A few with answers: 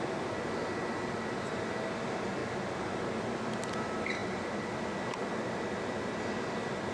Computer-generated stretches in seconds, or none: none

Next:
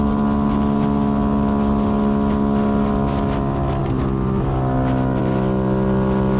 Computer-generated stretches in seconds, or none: none

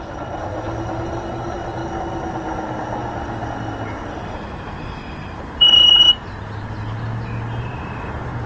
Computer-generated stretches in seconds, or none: 0.0-1.8 (vocoder, BigVGAN v2); 4.3-6.1; 7.8-8.5